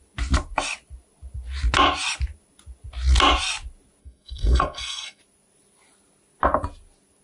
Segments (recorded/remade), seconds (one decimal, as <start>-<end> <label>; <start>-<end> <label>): 0.0-4.0 recorded; 4.0-5.2 remade; 5.2-7.2 recorded